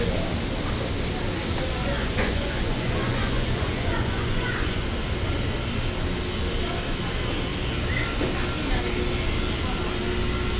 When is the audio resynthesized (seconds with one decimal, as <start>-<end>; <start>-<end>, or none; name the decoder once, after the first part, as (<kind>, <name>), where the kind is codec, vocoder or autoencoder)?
1.8-4.8 (vocoder, Vocos)